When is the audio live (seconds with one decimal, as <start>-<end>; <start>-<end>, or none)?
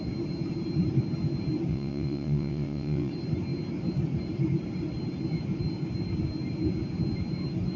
0.0-1.7; 3.1-7.8